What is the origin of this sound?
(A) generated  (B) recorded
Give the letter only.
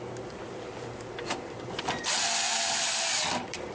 B